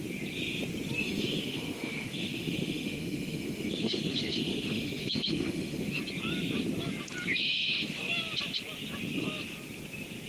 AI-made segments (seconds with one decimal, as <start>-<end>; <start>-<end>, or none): 1.0-6.0; 7.4-8.0

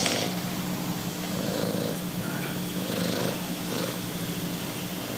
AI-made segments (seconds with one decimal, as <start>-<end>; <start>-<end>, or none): 1.0-4.1

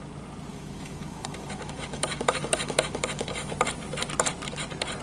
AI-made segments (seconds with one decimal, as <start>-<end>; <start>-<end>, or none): 0.5-3.5

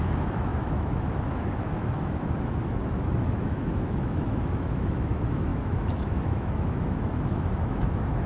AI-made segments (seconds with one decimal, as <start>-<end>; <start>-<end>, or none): 0.0-8.3

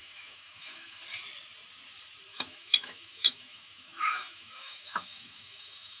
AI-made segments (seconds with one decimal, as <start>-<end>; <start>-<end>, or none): 0.0-1.0; 2.3-6.0

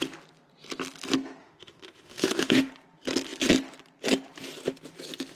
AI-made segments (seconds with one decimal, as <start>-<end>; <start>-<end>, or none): 1.4-2.7